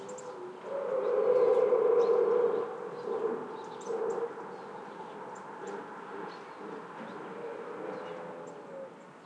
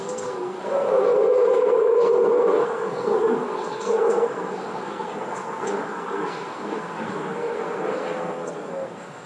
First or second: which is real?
first